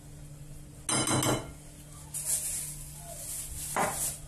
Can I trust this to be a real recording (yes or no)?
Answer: yes